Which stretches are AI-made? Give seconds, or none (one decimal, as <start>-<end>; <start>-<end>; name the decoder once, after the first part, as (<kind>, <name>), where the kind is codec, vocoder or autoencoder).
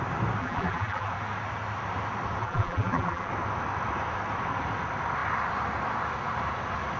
0.4-1.1 (vocoder, BigVGAN v2); 2.4-3.3